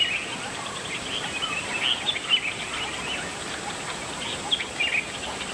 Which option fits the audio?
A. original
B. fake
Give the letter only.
A